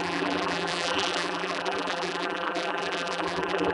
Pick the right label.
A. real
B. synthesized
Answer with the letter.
B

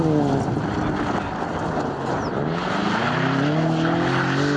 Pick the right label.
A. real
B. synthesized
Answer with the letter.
A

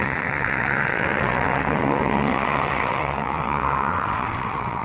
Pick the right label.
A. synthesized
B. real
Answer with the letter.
A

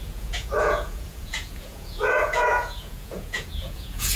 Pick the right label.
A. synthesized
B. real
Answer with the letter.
A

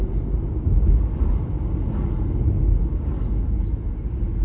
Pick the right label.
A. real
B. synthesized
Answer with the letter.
A